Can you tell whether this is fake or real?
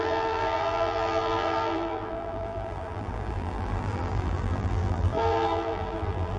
fake